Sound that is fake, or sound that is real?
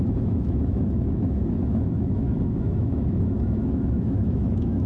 fake